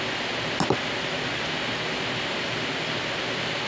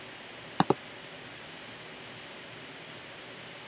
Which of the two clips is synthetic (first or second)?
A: second